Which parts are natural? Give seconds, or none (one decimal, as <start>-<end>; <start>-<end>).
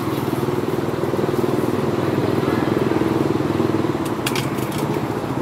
0.0-2.2; 2.7-4.6